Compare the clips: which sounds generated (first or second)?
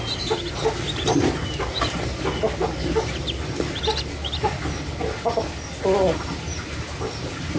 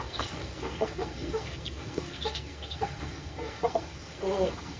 second